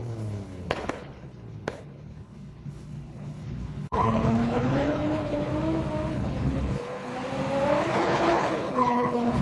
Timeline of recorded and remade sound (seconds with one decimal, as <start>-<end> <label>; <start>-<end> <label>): 0.0-5.5 remade; 5.5-6.1 recorded; 6.1-7.1 remade; 7.1-7.8 recorded; 7.8-9.4 remade